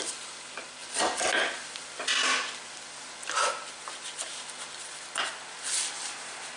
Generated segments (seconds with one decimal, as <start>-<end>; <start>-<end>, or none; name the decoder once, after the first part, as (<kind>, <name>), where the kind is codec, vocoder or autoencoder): none